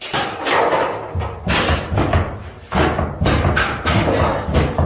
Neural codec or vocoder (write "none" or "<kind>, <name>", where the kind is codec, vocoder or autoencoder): none